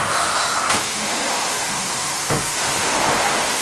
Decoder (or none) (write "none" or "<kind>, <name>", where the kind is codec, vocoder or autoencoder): autoencoder, DAC-VAE